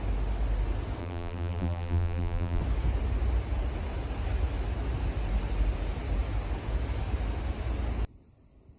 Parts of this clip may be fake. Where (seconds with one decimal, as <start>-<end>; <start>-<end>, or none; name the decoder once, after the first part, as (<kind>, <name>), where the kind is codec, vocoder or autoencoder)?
1.0-2.6 (vocoder, BigVGAN v2)